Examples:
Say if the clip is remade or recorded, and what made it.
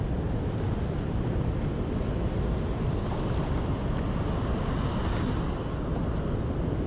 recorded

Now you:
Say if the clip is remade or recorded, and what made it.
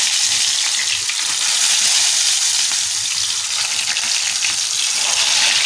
recorded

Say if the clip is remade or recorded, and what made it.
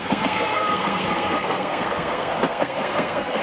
remade, codec, SNAC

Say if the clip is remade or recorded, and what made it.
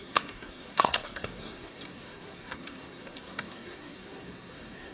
remade, codec, SNAC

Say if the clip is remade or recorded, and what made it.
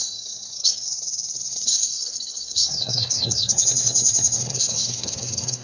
remade, codec, SNAC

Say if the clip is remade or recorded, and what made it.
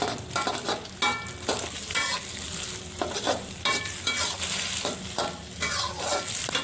recorded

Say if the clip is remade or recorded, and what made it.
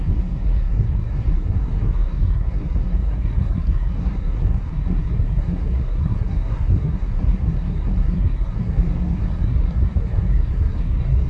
remade, codec, SNAC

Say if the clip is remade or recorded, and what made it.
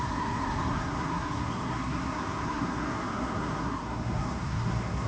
remade, codec, SNAC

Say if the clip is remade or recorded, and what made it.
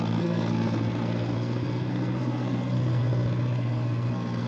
remade, codec, SNAC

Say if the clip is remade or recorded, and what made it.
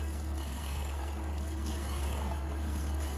remade, codec, SNAC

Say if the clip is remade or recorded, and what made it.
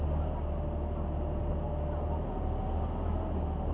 recorded